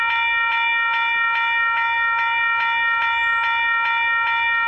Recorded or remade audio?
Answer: recorded